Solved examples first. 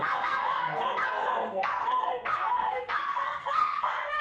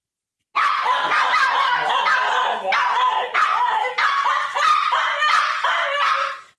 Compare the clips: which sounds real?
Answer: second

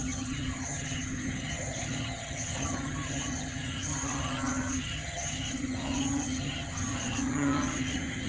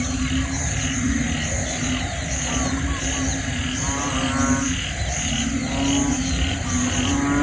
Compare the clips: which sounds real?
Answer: second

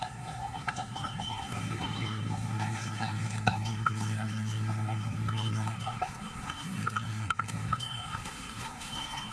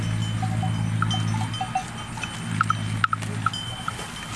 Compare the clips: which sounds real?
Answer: second